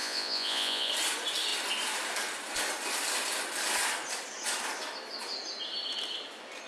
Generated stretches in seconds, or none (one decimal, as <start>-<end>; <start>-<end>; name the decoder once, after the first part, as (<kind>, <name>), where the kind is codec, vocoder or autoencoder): 0.0-0.9 (vocoder, Vocos)